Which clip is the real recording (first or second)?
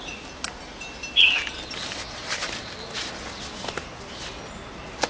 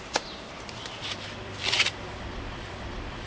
first